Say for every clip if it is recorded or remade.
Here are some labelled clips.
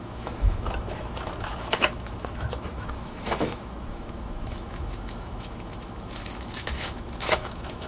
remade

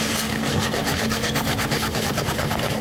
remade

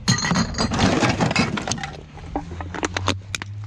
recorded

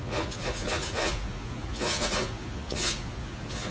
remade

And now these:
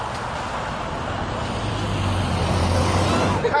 recorded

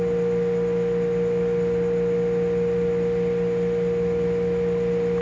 recorded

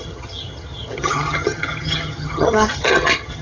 remade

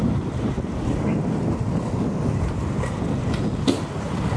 recorded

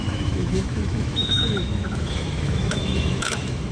remade